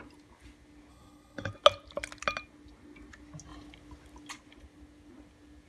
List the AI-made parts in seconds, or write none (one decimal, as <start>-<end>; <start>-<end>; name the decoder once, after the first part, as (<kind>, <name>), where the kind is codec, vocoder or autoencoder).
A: 0.9-1.5 (codec, HILCodec)